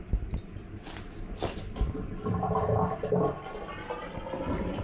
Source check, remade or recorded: recorded